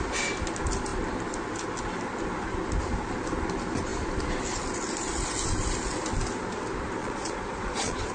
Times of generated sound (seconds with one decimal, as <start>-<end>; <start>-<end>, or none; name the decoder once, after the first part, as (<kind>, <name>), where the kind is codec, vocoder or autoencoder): 7.0-8.1 (vocoder, Vocos)